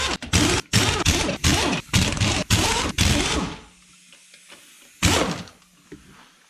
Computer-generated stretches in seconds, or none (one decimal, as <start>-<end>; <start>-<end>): none